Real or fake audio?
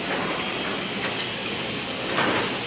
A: real